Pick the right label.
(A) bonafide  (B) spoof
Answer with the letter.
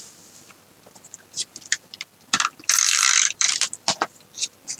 B